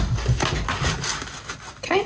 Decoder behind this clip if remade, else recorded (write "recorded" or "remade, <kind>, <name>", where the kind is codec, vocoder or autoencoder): recorded